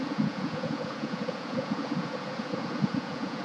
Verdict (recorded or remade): remade